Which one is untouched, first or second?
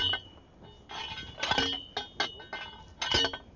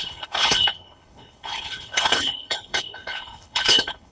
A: first